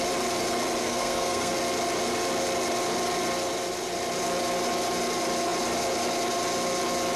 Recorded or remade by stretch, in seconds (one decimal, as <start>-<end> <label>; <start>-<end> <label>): 0.0-0.8 recorded; 0.8-1.5 remade; 1.5-7.2 recorded

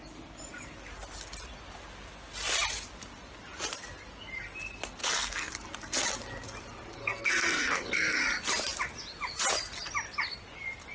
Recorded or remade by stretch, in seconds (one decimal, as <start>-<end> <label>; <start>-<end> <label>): 0.0-5.0 recorded; 5.0-5.5 remade; 5.5-7.0 recorded; 7.0-8.2 remade; 8.2-10.9 recorded

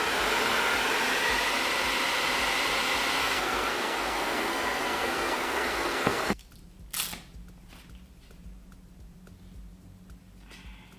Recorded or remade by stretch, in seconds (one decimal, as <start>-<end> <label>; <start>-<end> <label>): 0.0-3.2 recorded; 3.2-6.5 remade; 6.5-11.0 recorded

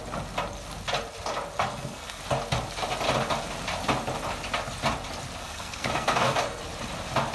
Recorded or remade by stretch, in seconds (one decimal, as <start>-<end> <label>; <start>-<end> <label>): 0.0-1.7 recorded; 1.7-2.2 remade; 2.2-5.4 recorded; 5.4-6.6 remade; 6.6-7.3 recorded

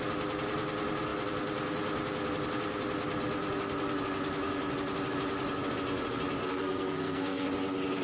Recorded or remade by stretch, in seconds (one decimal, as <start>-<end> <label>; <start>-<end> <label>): 0.0-6.4 recorded; 6.4-7.5 remade; 7.5-8.0 recorded

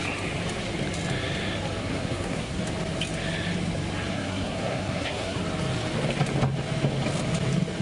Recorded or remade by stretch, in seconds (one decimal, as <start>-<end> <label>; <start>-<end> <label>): 0.0-1.8 recorded; 1.8-2.6 remade; 2.6-4.1 recorded; 4.1-5.4 remade; 5.4-7.8 recorded

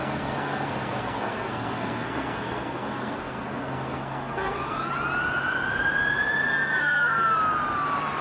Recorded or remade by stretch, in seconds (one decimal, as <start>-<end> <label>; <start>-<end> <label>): 0.0-4.9 remade; 4.9-6.8 recorded; 6.8-7.4 remade; 7.4-8.2 recorded